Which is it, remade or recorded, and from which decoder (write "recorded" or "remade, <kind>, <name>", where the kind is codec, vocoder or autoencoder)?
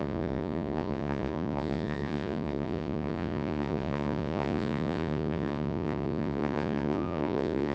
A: remade, vocoder, Vocos